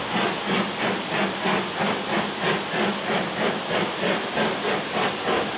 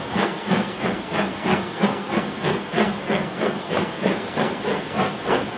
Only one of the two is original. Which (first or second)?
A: first